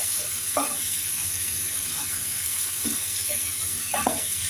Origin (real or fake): fake